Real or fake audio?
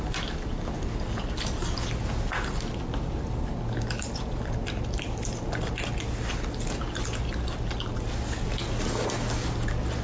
real